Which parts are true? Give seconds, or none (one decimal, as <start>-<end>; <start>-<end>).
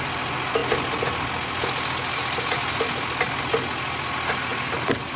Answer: 0.0-5.2